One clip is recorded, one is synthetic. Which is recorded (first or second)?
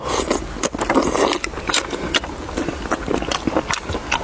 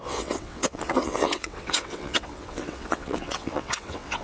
first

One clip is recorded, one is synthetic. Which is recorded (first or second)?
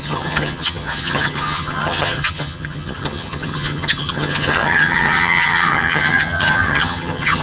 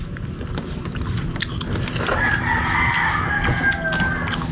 second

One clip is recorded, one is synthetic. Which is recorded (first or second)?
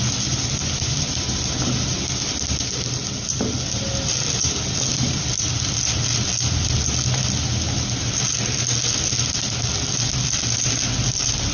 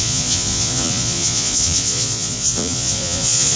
first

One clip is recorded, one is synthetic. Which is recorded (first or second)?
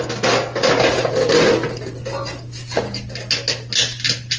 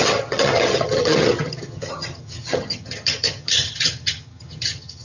first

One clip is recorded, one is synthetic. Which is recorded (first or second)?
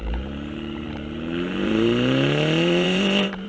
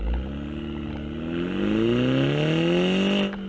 second